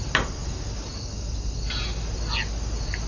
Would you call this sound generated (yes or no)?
no